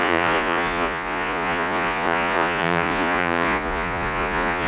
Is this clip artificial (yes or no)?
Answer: yes